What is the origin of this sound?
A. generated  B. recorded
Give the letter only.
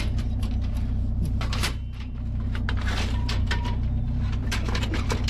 A